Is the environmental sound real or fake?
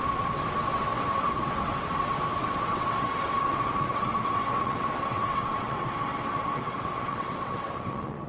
fake